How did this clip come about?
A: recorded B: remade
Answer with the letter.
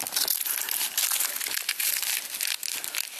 A